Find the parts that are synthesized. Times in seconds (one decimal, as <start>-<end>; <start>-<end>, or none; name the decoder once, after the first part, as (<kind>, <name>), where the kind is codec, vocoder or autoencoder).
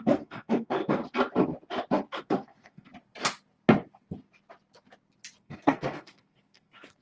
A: 0.0-1.0 (codec, SNAC); 2.2-2.9; 5.4-7.0